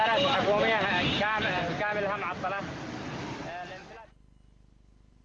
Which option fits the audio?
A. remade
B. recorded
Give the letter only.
B